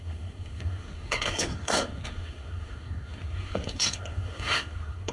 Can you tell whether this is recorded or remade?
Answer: remade